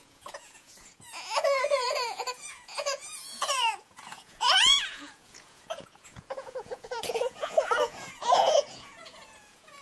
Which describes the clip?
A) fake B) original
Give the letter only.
A